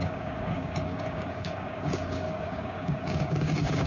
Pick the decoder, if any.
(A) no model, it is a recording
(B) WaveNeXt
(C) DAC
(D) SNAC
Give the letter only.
C